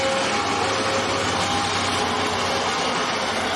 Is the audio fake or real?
real